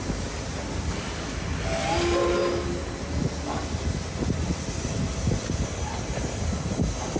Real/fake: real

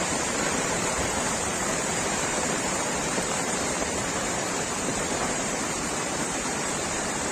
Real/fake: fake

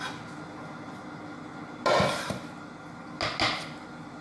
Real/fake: real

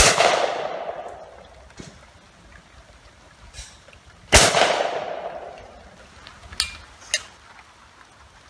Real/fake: real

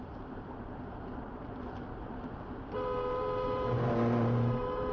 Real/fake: fake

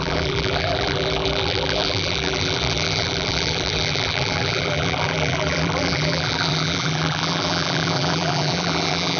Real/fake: fake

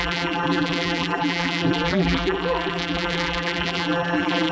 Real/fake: fake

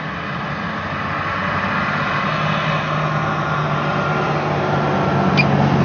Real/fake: real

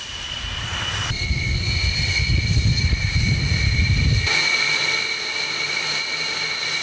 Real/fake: fake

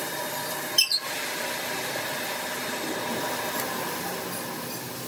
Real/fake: real